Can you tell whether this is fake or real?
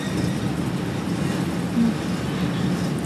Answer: real